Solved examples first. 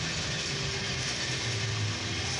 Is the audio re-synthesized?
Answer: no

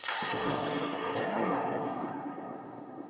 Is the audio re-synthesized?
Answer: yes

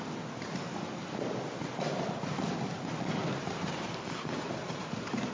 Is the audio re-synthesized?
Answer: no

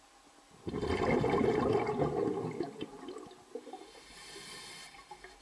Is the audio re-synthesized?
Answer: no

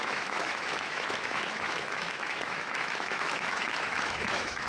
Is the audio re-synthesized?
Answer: yes